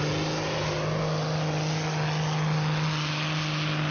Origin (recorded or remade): recorded